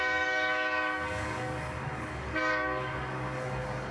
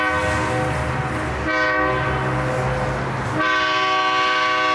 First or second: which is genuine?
second